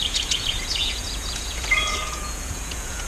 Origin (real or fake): fake